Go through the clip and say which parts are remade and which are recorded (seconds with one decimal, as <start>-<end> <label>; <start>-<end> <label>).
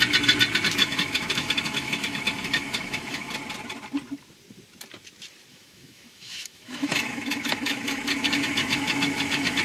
0.0-0.8 recorded; 0.8-3.3 remade; 3.3-5.5 recorded; 5.5-9.6 remade